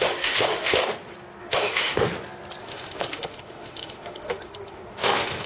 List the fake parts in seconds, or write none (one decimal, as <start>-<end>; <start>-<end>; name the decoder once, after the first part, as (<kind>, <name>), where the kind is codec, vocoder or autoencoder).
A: 0.0-0.8 (autoencoder, DAC-VAE); 1.4-2.1; 2.6-5.5